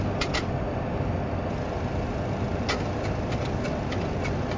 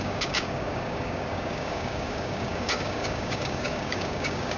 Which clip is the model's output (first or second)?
second